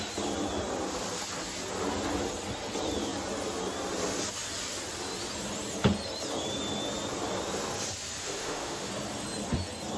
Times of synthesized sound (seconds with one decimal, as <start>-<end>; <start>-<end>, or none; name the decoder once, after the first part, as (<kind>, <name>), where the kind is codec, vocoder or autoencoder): 8.2-8.9 (autoencoder, DAC-VAE)